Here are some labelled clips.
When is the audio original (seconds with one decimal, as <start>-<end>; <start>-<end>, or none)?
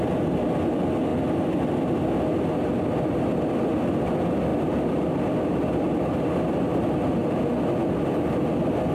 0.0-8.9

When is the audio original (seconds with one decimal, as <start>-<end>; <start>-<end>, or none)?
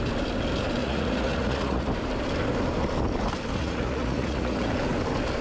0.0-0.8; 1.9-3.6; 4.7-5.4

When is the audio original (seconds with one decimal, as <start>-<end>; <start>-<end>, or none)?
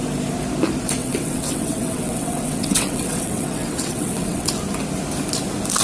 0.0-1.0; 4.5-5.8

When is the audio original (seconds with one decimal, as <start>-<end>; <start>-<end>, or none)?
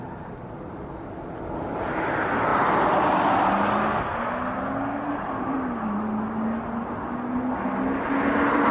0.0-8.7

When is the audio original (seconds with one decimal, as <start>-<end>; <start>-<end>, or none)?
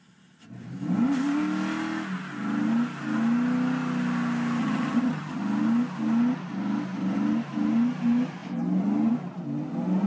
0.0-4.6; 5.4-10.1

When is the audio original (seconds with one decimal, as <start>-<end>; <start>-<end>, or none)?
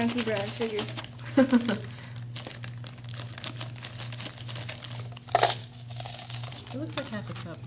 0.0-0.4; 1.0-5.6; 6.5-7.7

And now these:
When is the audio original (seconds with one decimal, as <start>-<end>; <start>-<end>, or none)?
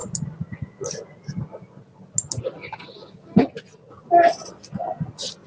0.0-5.5